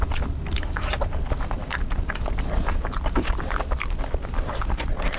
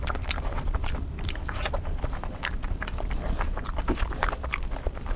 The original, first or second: first